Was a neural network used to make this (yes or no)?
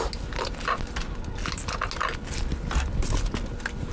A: no